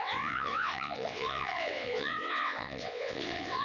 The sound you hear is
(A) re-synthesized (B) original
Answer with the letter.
A